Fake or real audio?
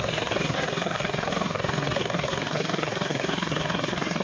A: fake